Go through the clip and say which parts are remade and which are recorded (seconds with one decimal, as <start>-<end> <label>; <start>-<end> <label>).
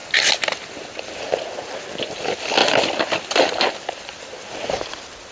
0.0-5.3 recorded